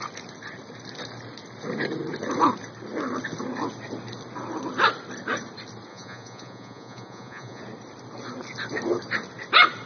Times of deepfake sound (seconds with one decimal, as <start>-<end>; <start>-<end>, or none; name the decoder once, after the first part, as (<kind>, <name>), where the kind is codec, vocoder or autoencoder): 5.9-7.6 (vocoder, Vocos)